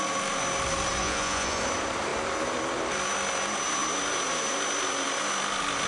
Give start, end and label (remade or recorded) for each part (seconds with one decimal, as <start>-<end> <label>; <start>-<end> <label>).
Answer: 0.0-1.0 recorded; 1.0-1.6 remade; 1.6-5.9 recorded